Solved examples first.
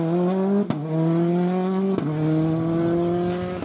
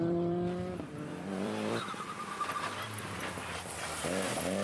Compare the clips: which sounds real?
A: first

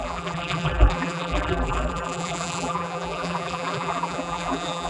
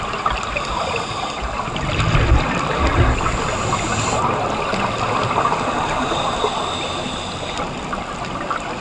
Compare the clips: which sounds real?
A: second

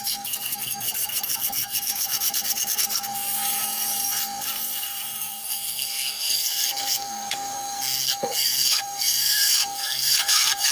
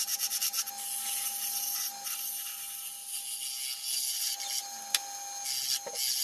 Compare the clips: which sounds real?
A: second